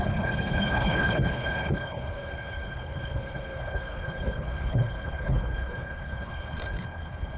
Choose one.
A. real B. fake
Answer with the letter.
B